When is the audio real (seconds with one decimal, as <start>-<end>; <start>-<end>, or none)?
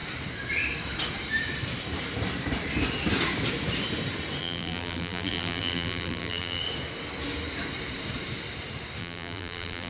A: 0.0-4.4; 6.6-9.0